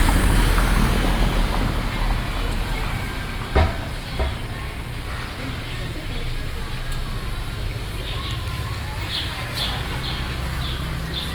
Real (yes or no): yes